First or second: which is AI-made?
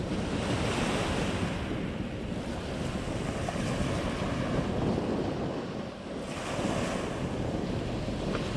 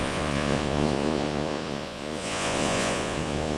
second